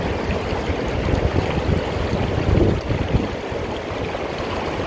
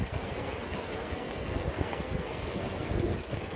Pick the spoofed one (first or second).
second